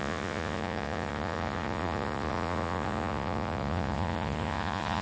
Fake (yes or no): yes